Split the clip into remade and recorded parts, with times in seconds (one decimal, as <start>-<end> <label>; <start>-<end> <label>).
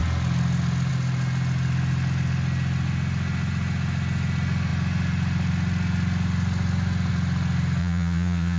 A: 0.0-7.8 recorded; 7.8-8.6 remade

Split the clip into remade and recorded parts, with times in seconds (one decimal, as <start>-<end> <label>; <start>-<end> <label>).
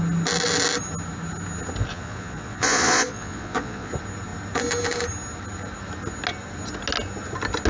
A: 0.0-1.9 recorded; 1.9-3.9 remade; 3.9-7.7 recorded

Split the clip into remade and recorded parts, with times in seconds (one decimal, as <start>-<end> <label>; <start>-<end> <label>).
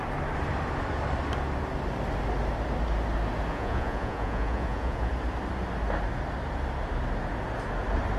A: 0.0-3.5 recorded; 3.5-5.1 remade; 5.1-8.2 recorded